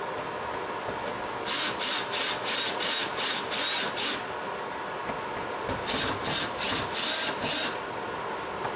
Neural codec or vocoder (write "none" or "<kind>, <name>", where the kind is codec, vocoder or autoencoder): none